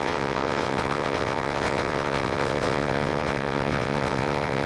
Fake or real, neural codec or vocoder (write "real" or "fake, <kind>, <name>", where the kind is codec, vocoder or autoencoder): fake, vocoder, WaveNeXt